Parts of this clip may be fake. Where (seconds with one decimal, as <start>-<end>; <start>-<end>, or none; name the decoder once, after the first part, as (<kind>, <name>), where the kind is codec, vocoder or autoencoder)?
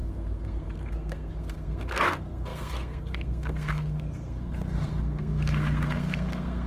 0.0-6.7 (codec, SNAC)